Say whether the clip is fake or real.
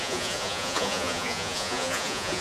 fake